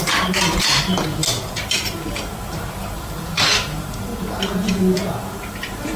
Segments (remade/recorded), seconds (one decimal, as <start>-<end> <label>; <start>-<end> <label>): 0.0-4.1 remade; 4.1-5.2 recorded; 5.2-6.0 remade